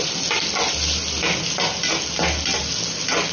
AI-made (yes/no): no